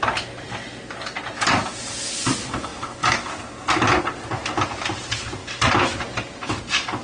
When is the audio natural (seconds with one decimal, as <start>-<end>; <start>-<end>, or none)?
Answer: 0.0-2.7; 3.8-5.4; 6.6-7.0